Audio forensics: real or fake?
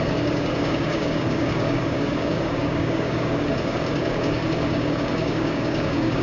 fake